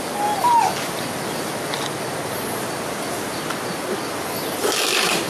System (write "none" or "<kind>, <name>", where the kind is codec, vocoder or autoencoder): none